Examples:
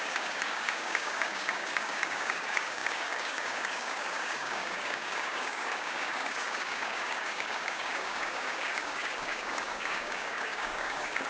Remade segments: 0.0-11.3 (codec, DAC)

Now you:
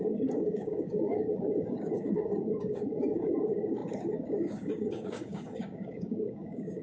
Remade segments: 0.0-6.8 (codec, DAC)

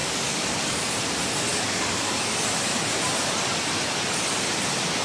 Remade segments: 0.0-0.8 (codec, DAC); 1.5-2.2

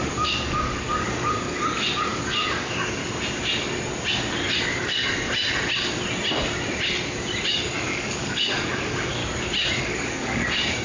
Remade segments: 0.0-3.0 (codec, DAC); 4.6-5.0; 7.5-9.2; 9.8-10.8

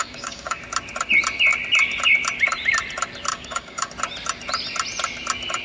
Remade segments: 0.0-0.6 (codec, DAC); 3.3-3.9

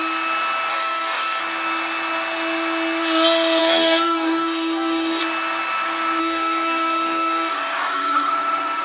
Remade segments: 0.7-1.4 (codec, DAC); 3.6-5.2; 6.2-8.3

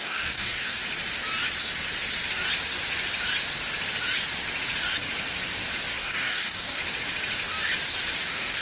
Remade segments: 0.0-0.8 (codec, DAC); 6.0-6.8; 8.2-8.6

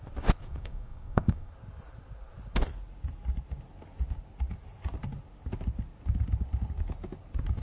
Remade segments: 0.4-1.5 (codec, DAC)